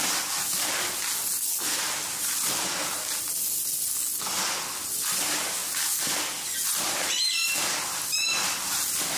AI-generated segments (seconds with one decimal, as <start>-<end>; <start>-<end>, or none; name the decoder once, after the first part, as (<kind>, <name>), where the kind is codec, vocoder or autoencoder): none